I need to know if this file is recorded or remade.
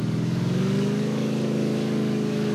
remade